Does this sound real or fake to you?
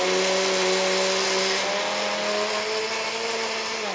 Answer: real